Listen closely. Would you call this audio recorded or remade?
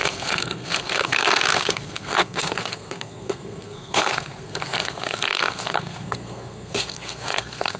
remade